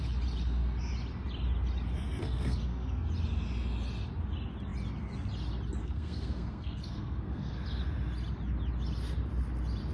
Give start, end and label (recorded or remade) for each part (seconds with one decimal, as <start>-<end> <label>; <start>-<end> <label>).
0.0-2.2 recorded; 2.2-3.1 remade; 3.1-5.8 recorded; 5.8-7.5 remade; 7.5-9.9 recorded